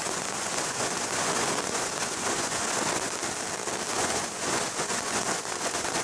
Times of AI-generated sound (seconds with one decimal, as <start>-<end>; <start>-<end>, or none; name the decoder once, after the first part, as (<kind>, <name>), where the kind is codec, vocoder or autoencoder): 0.0-3.2 (vocoder, Vocos); 3.9-6.0